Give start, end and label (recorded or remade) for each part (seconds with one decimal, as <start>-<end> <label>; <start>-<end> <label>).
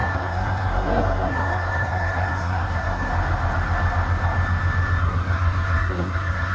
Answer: 0.0-3.1 remade; 3.1-5.0 recorded; 5.0-6.5 remade